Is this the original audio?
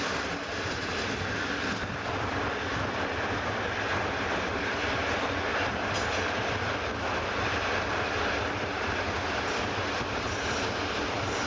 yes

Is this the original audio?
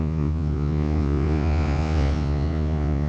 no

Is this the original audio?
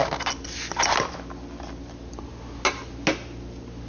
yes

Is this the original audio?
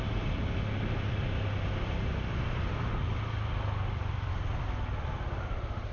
yes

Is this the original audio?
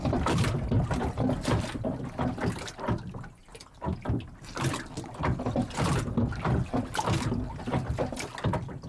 yes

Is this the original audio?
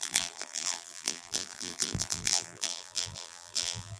no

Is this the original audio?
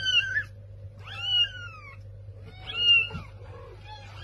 yes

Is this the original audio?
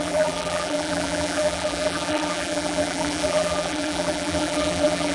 no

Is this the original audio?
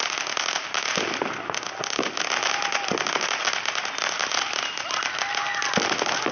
yes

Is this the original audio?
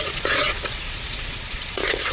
no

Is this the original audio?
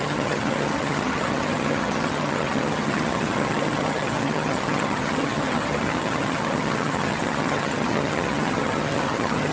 no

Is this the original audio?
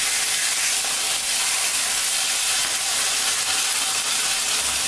yes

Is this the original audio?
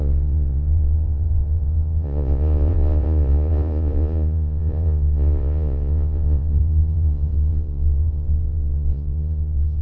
no